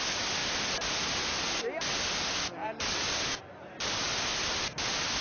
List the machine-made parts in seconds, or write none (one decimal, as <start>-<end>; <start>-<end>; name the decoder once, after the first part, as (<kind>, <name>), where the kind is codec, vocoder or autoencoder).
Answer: none